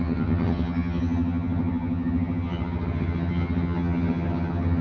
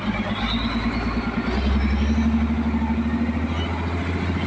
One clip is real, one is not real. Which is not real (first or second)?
first